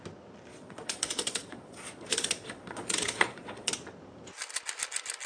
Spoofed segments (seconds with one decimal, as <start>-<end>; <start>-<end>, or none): 0.5-3.7